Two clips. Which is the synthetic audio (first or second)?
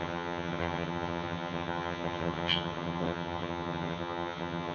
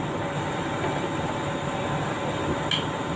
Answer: first